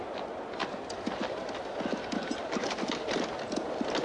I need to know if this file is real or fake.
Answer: real